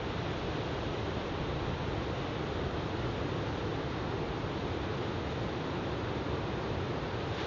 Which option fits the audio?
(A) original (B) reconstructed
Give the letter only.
A